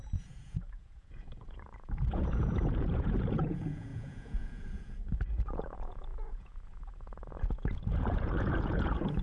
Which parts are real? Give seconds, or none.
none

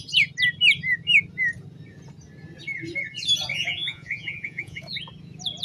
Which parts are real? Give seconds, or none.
0.0-3.5; 4.8-5.6